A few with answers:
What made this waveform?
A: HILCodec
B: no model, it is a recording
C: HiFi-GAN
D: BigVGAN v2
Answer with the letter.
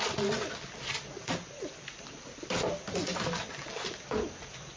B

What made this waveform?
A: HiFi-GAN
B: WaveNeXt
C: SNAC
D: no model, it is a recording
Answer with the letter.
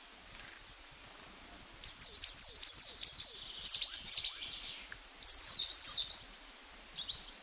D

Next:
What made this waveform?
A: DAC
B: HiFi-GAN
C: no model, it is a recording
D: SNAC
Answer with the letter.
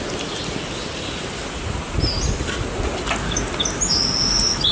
C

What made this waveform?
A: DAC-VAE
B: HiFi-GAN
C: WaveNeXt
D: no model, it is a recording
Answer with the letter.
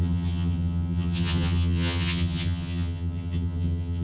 B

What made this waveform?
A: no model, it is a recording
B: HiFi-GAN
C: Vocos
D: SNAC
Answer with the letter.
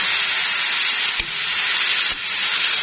A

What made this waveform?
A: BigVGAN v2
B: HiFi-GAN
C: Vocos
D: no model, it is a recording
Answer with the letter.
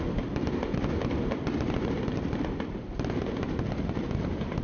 D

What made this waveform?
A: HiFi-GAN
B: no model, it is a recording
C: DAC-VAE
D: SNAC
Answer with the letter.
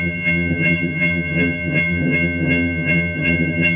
A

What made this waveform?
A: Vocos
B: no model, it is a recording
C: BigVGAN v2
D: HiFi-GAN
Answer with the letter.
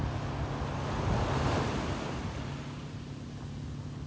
B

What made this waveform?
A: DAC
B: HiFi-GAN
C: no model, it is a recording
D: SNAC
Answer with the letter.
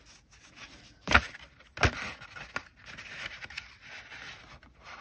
C